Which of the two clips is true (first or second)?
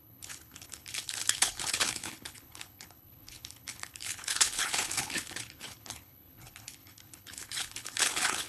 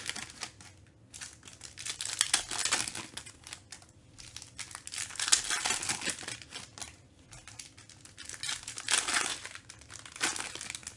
second